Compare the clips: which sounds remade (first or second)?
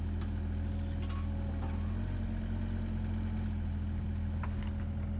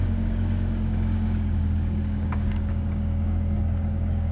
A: second